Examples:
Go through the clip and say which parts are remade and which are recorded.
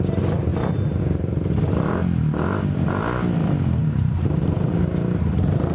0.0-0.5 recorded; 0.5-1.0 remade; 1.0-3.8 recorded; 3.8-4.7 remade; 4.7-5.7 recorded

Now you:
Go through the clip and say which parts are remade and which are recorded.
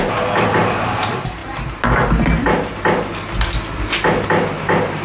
0.0-5.0 recorded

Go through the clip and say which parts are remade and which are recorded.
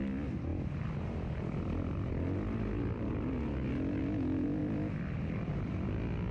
0.0-0.5 recorded; 0.5-2.1 remade; 2.1-4.6 recorded; 4.6-5.5 remade; 5.5-6.3 recorded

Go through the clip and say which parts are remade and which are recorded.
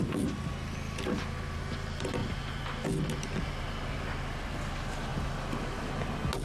0.0-6.4 recorded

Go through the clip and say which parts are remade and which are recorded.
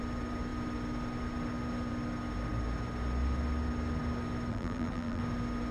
0.0-4.5 recorded; 4.5-5.2 remade; 5.2-5.7 recorded